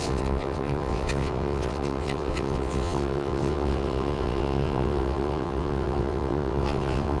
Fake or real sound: fake